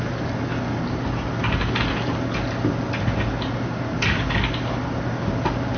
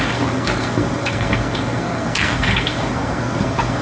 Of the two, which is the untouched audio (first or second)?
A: first